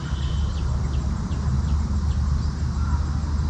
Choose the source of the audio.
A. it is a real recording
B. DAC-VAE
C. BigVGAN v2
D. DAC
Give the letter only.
A